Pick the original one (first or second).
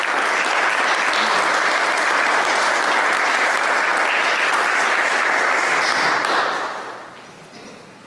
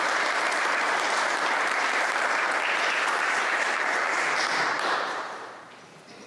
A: first